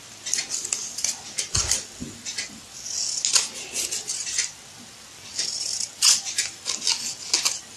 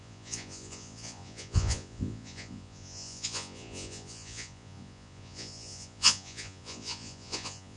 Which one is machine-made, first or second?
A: second